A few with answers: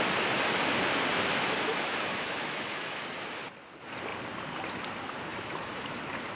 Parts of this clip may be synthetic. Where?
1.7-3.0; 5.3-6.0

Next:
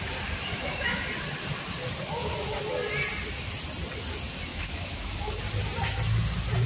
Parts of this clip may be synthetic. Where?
0.5-1.0; 4.5-5.3

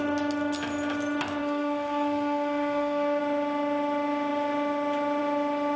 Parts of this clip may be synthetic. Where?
1.4-3.2

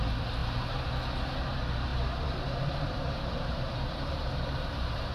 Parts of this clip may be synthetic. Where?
0.4-0.9; 1.9-5.1

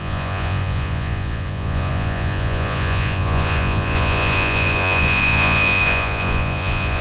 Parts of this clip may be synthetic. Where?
0.0-7.0